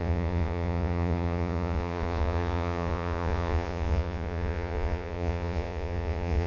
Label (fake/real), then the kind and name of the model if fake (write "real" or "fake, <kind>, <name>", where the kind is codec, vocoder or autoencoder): fake, vocoder, Vocos